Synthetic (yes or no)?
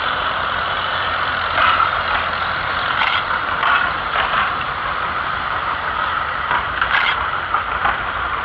yes